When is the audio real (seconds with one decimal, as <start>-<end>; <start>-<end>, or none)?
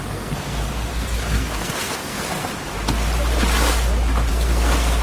2.5-4.3